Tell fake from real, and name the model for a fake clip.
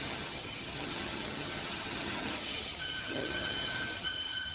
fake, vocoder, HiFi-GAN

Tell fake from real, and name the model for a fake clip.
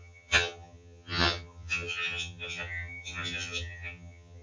fake, vocoder, HiFi-GAN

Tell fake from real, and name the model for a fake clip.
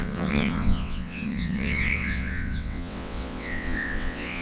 fake, vocoder, WaveNeXt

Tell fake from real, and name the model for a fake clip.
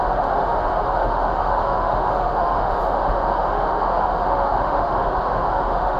fake, autoencoder, DAC-VAE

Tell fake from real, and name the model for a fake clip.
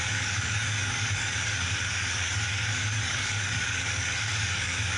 fake, codec, DAC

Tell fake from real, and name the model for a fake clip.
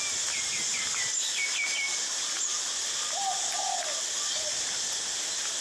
real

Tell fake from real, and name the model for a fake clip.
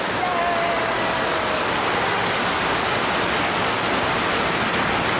real